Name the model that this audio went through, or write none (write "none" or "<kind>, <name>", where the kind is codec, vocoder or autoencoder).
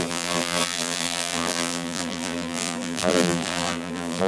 vocoder, BigVGAN v2